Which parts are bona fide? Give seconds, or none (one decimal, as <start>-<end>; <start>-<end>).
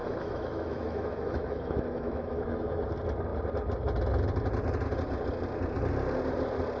2.8-6.8